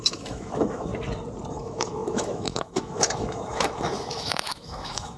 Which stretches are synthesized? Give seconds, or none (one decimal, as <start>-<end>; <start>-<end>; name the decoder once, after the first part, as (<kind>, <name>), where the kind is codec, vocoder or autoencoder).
0.0-0.9 (autoencoder, DAC-VAE); 1.5-5.2